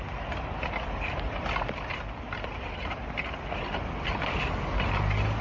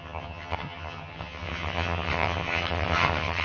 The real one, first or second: first